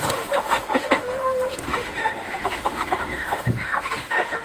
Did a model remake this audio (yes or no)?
yes